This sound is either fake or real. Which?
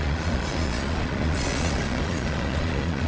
fake